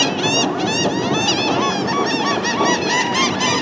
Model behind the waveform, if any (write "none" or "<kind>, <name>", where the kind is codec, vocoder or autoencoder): none